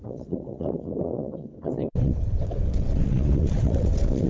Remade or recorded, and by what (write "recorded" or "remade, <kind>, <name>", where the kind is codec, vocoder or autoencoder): remade, vocoder, WaveNeXt